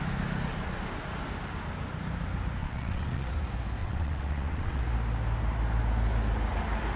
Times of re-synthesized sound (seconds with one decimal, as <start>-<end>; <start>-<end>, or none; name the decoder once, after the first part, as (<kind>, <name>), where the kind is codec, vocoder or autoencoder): 2.6-3.3 (vocoder, WaveNeXt); 3.8-4.8